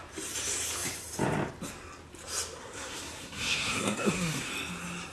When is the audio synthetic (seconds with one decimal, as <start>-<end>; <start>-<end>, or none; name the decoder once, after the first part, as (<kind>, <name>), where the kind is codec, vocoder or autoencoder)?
2.6-4.5 (codec, SNAC)